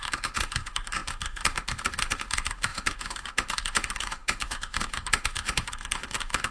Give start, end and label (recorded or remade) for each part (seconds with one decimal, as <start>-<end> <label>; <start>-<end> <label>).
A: 0.0-6.5 remade